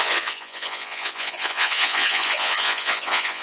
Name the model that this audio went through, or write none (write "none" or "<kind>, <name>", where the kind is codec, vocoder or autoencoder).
vocoder, Vocos